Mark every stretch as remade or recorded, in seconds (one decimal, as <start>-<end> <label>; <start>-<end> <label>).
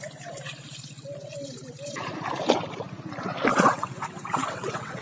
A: 0.0-3.5 recorded; 3.5-5.0 remade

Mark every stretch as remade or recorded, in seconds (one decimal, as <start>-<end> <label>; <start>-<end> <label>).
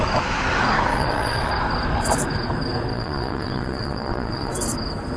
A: 0.0-0.9 recorded; 0.9-1.5 remade; 1.5-2.9 recorded; 2.9-4.5 remade; 4.5-5.2 recorded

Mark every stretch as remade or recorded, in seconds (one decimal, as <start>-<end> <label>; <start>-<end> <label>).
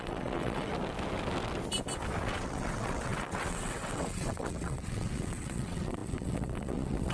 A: 0.0-0.7 remade; 0.7-2.2 recorded; 2.2-7.1 remade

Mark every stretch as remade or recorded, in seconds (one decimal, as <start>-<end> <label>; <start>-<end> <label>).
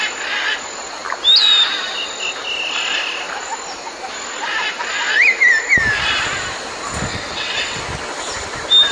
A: 0.0-7.1 recorded; 7.1-7.8 remade; 7.8-8.9 recorded